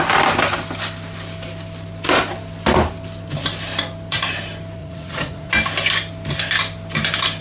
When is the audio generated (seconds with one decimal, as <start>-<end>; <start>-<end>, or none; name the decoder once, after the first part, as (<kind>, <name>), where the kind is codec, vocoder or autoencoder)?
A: 4.8-5.5 (vocoder, Vocos)